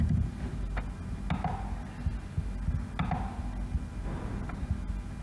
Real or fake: real